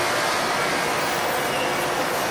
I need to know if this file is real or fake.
real